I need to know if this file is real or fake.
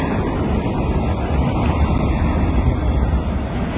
real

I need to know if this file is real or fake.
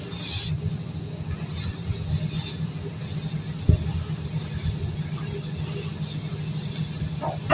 real